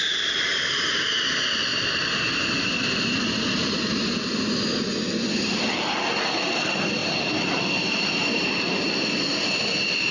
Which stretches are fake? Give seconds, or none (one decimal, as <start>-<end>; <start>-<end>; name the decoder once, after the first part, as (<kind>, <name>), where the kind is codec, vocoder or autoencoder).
1.7-4.2 (vocoder, BigVGAN v2); 7.0-9.6

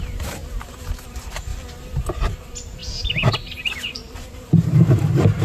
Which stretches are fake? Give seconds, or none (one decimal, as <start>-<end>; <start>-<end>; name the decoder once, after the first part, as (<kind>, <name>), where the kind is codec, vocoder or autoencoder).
0.0-0.4 (vocoder, BigVGAN v2); 1.1-1.5; 2.1-2.8; 3.6-5.4